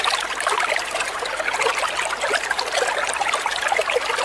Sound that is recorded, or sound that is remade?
recorded